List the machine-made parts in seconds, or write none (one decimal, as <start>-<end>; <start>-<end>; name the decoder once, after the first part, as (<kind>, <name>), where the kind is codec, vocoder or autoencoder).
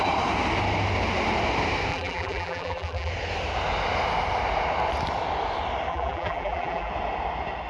1.9-3.1 (vocoder, BigVGAN v2); 5.9-6.9